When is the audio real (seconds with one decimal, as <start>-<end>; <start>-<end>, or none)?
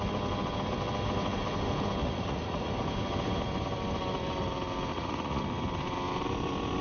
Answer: 0.0-2.0; 2.7-4.9; 5.4-6.8